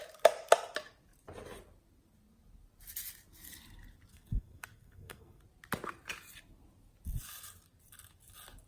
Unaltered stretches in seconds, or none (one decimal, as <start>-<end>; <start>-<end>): 0.0-4.1; 5.4-8.7